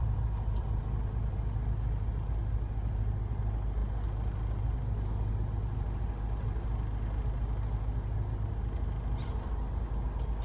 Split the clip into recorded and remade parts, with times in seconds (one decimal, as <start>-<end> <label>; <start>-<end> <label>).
0.0-0.8 remade; 0.8-10.4 recorded